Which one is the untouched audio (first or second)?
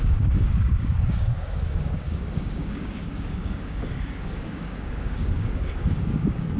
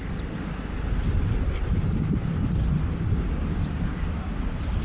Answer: second